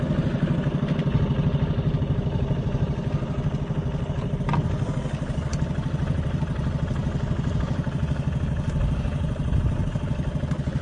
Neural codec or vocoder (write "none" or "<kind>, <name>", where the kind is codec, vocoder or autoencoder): none